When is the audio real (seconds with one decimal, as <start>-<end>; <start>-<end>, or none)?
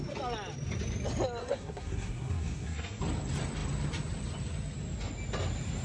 0.0-1.4; 3.0-5.8